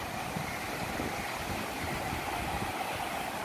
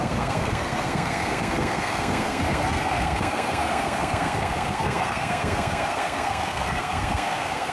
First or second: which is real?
first